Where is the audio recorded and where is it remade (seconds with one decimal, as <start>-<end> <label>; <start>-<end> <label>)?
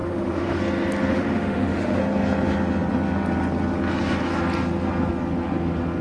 0.0-0.6 remade; 0.6-1.1 recorded; 1.1-2.0 remade; 2.0-6.0 recorded